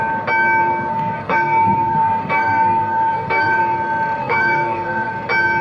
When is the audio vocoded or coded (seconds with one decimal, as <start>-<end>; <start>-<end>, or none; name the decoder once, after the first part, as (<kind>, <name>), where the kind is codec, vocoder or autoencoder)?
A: 0.9-3.6 (codec, SNAC); 4.2-5.1

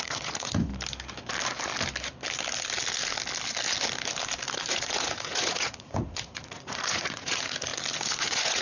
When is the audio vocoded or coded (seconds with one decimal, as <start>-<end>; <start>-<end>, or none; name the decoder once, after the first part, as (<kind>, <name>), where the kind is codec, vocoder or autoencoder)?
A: 0.0-0.7 (vocoder, Vocos); 4.7-7.7; 8.2-8.6

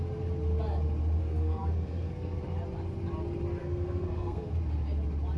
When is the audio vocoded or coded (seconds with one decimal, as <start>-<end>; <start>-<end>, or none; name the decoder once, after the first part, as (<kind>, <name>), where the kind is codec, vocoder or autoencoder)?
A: 1.2-2.4 (codec, SNAC); 3.6-4.5

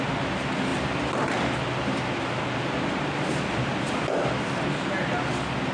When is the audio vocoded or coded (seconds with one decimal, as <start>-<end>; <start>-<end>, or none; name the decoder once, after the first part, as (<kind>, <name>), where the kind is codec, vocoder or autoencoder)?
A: none